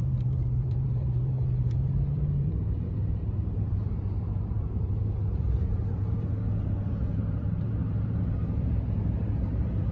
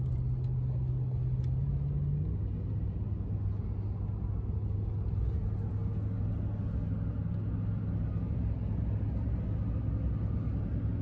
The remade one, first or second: first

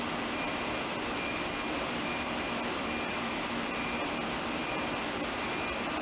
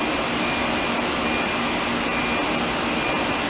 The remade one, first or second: first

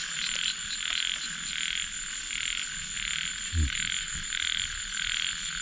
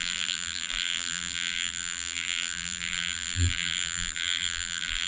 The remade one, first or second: second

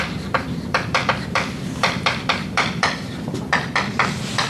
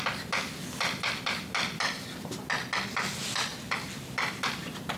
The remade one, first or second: first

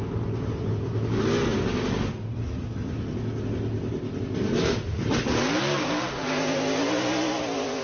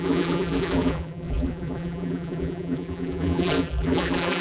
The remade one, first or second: second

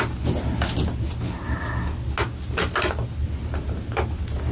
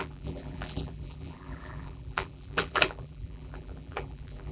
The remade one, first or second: second